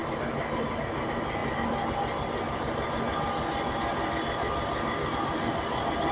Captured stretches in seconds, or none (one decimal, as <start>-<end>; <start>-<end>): 0.0-6.1